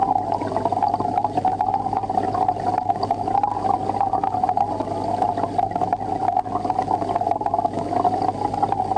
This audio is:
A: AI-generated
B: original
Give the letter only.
B